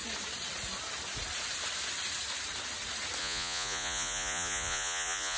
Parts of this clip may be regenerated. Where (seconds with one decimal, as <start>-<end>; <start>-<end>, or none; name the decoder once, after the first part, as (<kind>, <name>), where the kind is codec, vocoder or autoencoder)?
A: 3.2-5.4 (vocoder, Vocos)